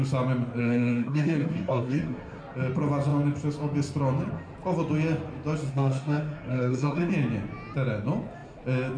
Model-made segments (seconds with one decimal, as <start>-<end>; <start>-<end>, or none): 0.6-2.4; 5.7-7.1